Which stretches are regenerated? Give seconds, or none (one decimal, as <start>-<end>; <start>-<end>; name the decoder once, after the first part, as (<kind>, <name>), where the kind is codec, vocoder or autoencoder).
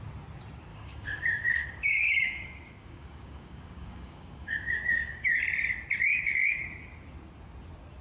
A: 0.7-5.4 (codec, DAC); 6.1-6.6